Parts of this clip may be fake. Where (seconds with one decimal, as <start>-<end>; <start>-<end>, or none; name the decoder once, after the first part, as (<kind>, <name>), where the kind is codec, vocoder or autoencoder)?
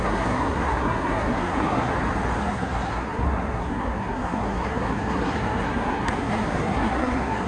0.0-1.9 (codec, SNAC); 2.4-7.5